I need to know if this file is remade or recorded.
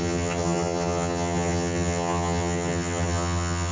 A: remade